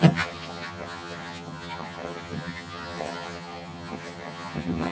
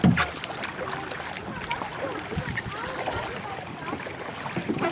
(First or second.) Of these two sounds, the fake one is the first